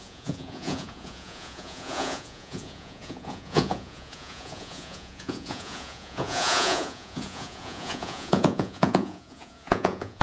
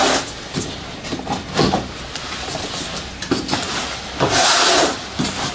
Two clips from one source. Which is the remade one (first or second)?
first